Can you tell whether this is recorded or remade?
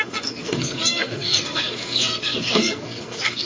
remade